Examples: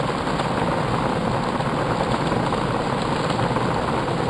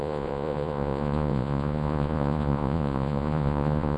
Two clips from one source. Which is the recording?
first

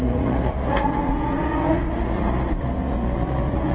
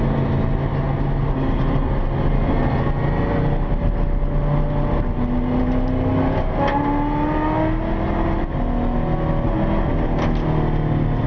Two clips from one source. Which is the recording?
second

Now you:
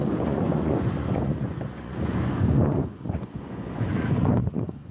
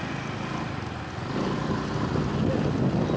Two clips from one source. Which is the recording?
second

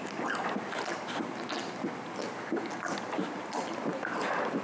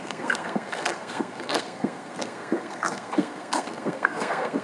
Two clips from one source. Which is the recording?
first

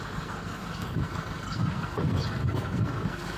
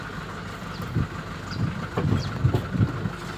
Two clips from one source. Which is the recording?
second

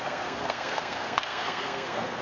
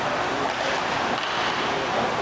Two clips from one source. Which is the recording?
second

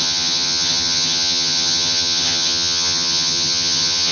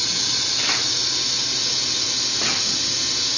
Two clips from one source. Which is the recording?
second